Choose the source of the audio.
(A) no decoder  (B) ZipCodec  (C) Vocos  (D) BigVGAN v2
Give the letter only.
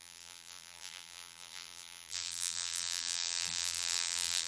D